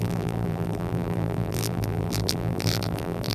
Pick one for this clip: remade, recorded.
remade